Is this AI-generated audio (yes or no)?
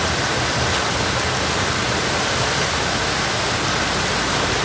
no